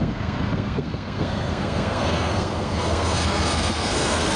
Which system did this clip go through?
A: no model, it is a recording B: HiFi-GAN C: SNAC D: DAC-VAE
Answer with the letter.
C